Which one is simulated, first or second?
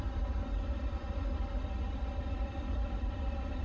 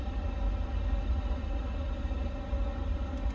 first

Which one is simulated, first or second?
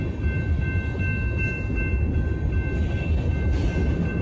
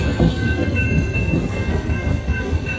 second